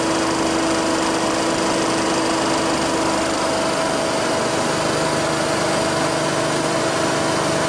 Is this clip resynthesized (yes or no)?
no